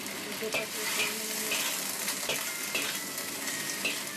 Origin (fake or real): real